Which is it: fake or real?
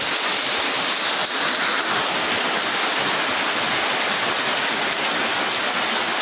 real